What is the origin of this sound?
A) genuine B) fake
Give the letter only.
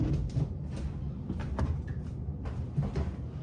A